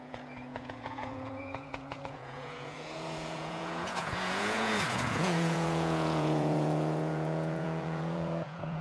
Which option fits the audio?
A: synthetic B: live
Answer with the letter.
A